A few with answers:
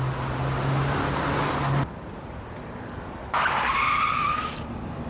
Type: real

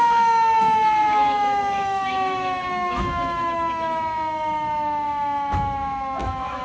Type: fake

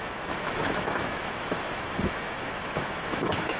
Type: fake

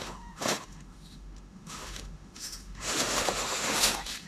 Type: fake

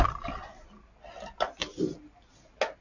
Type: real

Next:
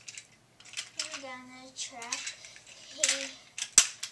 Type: real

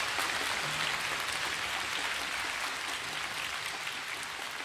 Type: real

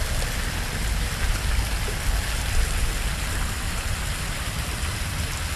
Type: real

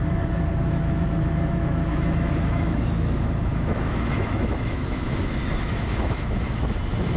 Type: fake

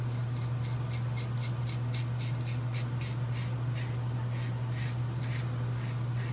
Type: real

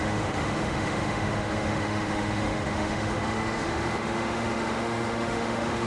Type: fake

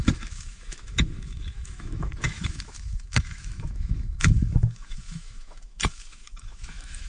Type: fake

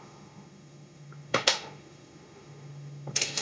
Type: fake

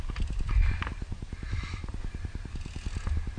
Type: real